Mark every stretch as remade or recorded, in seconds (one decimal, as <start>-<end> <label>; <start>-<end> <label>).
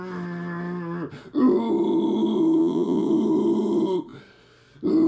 0.0-2.6 recorded; 2.6-3.1 remade; 3.1-5.1 recorded